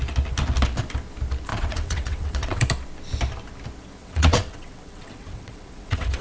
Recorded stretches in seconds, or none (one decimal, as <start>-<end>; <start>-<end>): 0.0-1.5; 2.6-4.0